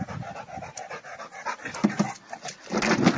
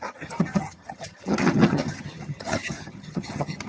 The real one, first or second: first